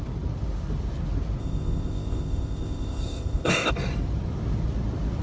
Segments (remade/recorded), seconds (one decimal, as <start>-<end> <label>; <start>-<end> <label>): 0.0-1.4 recorded; 1.4-3.7 remade; 3.7-5.2 recorded